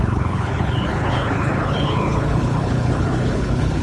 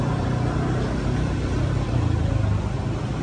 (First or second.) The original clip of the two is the second